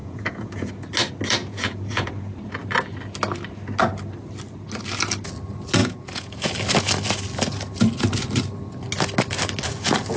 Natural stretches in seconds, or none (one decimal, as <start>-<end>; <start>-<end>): 0.7-1.4; 2.1-5.8; 6.5-10.2